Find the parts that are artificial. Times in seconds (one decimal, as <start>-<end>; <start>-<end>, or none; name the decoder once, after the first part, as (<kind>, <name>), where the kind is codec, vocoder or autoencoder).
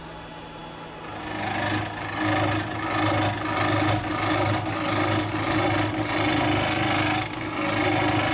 none